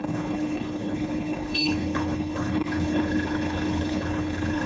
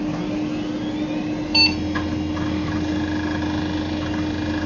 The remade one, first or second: first